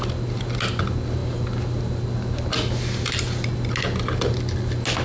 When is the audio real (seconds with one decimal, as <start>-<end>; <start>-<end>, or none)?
0.0-5.0